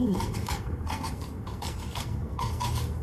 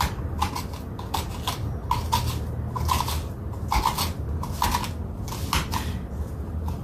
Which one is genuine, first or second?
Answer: second